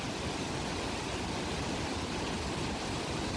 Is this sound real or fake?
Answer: real